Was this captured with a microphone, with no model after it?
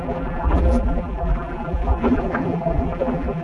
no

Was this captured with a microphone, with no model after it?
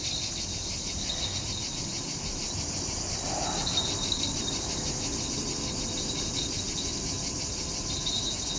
yes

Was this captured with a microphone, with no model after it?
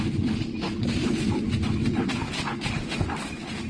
yes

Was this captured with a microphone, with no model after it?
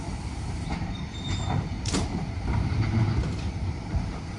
no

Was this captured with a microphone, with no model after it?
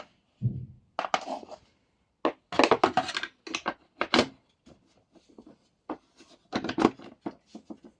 yes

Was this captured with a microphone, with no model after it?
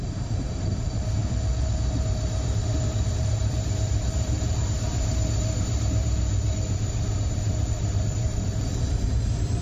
no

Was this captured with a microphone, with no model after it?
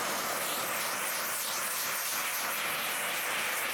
yes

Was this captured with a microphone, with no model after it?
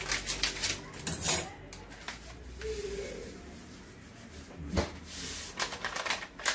yes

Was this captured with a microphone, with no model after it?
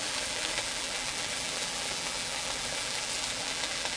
no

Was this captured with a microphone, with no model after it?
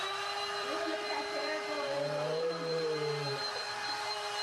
no